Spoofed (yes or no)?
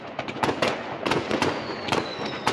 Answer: yes